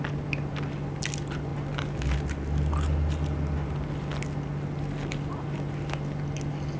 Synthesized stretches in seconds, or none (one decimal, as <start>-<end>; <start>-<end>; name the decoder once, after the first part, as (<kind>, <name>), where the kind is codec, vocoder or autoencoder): none

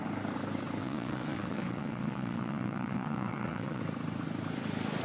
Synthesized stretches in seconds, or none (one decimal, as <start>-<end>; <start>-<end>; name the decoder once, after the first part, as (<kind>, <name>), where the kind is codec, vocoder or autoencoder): 0.8-3.8 (vocoder, WaveNeXt)

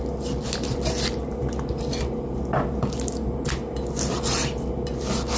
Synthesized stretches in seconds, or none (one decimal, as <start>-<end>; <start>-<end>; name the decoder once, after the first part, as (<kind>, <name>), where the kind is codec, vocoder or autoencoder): none

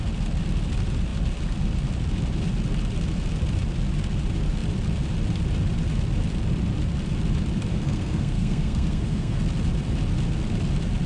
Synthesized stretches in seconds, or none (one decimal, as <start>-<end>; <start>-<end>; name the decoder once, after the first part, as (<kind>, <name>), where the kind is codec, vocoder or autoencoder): 7.7-9.4 (codec, SNAC)

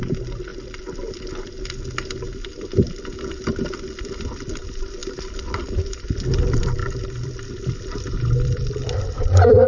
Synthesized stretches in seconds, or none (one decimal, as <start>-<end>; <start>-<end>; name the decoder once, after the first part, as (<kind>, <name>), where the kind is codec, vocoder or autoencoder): 0.0-0.5 (vocoder, BigVGAN v2); 4.0-5.0; 5.9-6.8; 7.5-9.7